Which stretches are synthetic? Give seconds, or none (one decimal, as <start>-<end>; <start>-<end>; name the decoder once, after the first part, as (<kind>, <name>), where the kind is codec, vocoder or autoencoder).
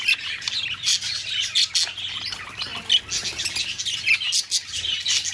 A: none